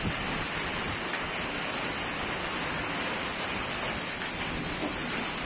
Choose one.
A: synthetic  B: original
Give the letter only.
B